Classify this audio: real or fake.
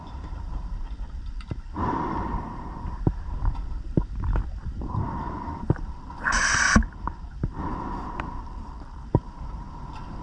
fake